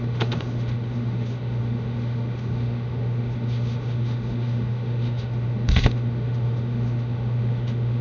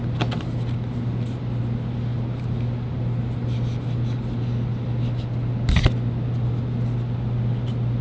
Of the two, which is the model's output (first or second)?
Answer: first